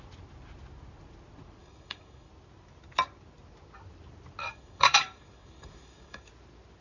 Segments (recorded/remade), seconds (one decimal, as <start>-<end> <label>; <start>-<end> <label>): 0.0-1.6 recorded; 1.6-2.3 remade; 2.3-4.4 recorded; 4.4-6.3 remade; 6.3-6.8 recorded